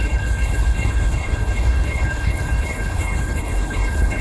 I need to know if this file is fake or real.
fake